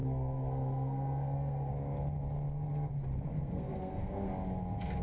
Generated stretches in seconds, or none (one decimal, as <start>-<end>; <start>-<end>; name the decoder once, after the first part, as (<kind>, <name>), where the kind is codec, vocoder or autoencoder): 0.0-1.7 (codec, SNAC); 3.3-4.3